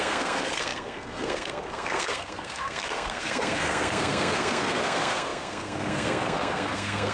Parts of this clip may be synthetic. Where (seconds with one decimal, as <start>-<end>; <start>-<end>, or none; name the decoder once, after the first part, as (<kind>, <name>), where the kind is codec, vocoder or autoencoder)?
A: 0.0-7.1 (codec, SNAC)